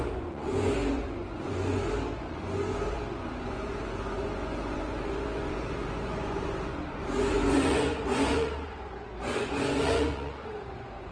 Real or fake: fake